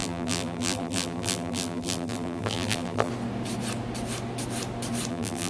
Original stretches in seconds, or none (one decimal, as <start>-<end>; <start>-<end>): 3.1-5.1